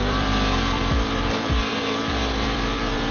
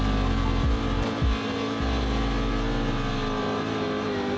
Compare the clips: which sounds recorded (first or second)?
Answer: second